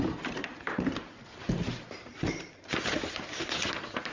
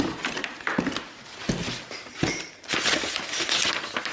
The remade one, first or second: first